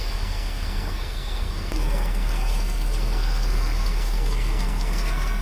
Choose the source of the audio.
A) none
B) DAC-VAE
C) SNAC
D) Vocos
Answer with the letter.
C